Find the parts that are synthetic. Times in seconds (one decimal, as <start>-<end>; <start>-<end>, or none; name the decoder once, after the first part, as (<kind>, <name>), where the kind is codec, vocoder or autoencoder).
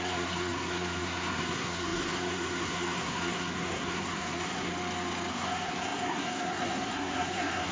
0.0-4.7 (codec, SNAC); 5.3-7.7